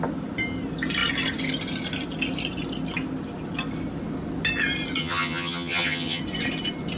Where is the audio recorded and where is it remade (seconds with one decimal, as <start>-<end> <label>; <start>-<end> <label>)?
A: 0.0-5.0 recorded; 5.0-6.2 remade; 6.2-7.0 recorded